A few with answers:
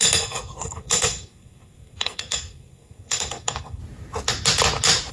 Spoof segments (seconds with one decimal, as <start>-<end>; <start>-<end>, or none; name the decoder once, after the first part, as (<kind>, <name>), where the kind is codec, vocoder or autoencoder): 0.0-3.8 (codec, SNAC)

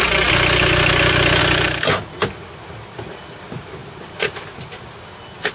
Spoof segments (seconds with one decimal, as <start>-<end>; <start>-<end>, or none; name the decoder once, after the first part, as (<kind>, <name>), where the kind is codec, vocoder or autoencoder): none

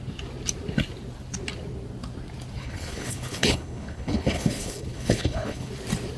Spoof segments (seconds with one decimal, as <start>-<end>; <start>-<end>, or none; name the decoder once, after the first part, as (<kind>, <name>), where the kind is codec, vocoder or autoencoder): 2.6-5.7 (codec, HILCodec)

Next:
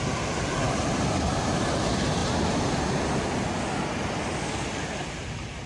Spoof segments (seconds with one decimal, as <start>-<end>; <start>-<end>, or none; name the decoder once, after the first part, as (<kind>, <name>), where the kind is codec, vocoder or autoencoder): none